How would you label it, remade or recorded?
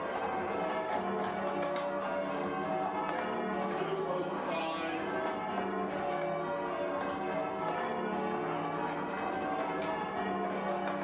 recorded